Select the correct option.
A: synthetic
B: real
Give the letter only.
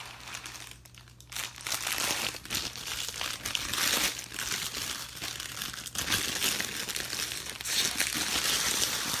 B